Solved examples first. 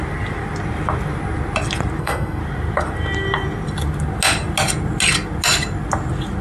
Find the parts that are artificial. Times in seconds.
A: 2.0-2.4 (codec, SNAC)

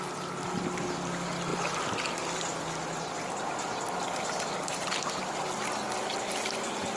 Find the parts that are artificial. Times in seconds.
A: none